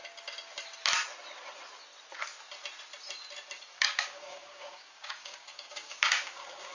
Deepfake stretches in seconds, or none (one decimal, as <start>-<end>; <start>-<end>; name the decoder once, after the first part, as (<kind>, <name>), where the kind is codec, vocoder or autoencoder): 3.7-6.7 (codec, DAC)